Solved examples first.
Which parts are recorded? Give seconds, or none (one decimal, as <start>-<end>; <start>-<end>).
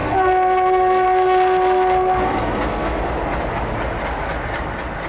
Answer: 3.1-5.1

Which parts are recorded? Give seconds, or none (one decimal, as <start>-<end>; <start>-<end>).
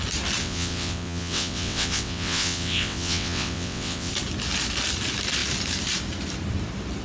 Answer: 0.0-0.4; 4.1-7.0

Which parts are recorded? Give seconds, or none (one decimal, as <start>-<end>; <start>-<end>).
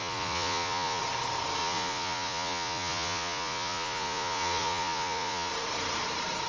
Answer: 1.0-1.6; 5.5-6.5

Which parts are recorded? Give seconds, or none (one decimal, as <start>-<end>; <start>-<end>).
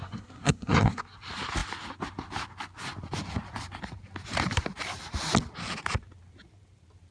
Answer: 1.0-7.1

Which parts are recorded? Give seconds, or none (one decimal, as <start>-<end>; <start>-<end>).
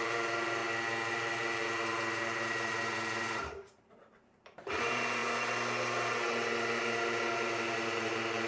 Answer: 0.6-1.1; 5.2-6.8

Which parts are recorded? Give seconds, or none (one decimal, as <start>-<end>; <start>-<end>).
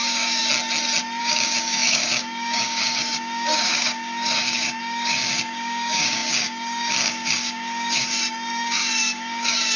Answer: 0.4-1.2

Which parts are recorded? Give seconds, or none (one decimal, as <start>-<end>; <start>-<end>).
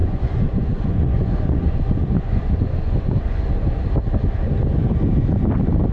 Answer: 3.5-5.9